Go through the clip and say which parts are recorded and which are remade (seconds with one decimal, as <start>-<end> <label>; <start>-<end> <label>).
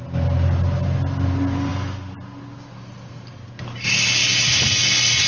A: 0.0-5.3 recorded